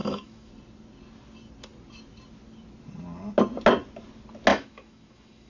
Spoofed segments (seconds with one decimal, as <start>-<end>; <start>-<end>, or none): 0.0-0.5; 4.5-5.5